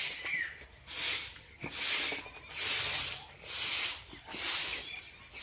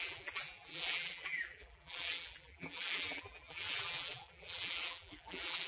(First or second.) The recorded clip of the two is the first